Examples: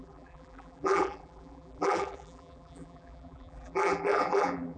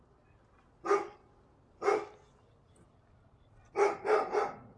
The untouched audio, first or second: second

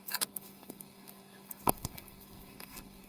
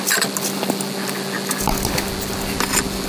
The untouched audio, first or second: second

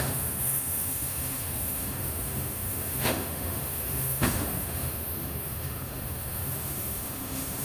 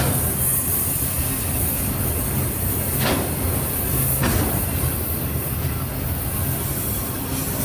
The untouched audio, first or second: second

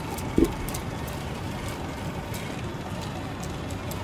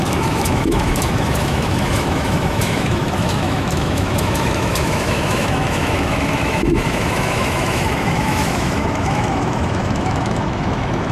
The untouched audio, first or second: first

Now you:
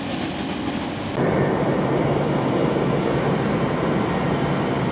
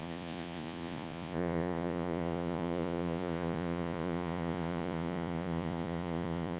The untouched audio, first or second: first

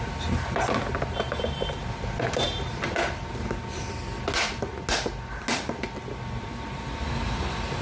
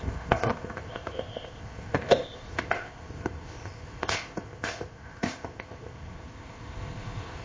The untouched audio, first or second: first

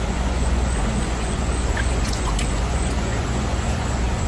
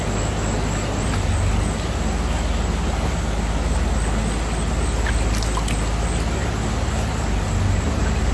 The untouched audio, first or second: second